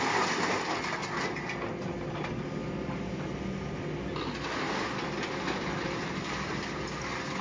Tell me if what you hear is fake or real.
real